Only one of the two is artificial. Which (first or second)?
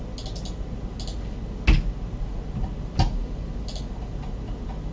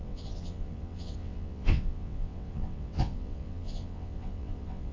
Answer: second